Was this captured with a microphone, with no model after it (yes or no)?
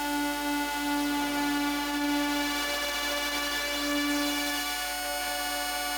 yes